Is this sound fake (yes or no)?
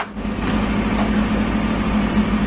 no